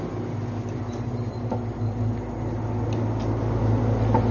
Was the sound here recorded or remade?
recorded